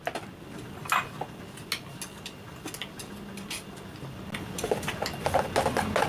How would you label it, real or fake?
real